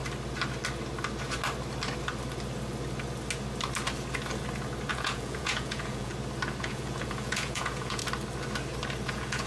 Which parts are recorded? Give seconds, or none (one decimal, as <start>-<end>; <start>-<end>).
0.0-4.9; 6.1-6.6; 8.0-9.1